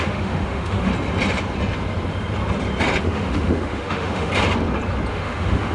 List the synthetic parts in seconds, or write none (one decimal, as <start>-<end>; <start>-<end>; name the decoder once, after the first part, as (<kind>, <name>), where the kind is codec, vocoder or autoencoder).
0.0-0.9 (autoencoder, DAC-VAE); 3.0-4.3; 5.1-5.7